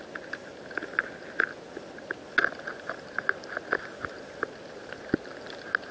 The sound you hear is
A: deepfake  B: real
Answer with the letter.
B